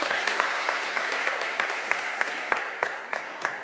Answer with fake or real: fake